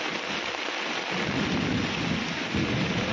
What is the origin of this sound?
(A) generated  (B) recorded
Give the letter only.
B